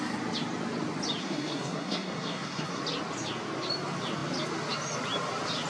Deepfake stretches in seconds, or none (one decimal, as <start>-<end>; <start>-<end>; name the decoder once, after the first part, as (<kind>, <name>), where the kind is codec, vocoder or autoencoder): 1.2-2.8 (codec, SNAC)